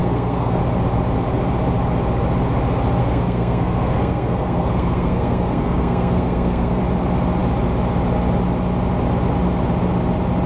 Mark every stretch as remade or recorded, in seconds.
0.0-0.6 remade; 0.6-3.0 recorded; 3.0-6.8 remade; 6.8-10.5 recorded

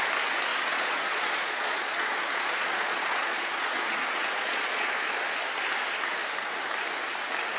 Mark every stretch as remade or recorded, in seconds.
0.0-0.5 recorded; 0.5-4.9 remade; 4.9-7.6 recorded

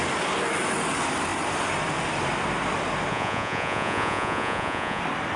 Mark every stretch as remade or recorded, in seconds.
0.0-3.1 recorded; 3.1-5.0 remade; 5.0-5.4 recorded

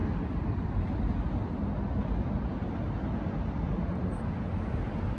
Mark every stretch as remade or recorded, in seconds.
0.0-5.2 recorded